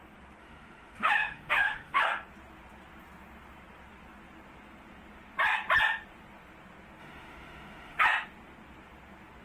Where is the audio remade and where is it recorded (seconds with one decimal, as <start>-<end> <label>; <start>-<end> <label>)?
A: 0.0-0.4 recorded; 0.4-2.0 remade; 2.0-7.0 recorded; 7.0-8.0 remade; 8.0-9.4 recorded